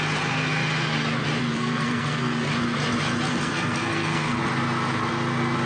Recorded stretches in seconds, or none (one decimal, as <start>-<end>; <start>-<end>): 0.0-1.5; 2.5-3.3; 4.4-5.7